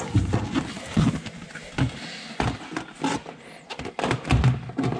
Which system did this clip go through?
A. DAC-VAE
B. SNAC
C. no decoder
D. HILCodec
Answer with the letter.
C